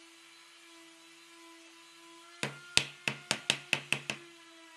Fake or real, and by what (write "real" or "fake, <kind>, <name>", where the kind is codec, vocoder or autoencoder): real